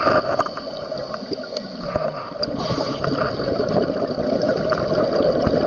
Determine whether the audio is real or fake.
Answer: real